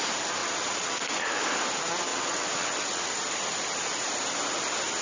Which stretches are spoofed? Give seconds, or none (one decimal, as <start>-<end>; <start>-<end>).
0.4-0.9; 2.1-3.0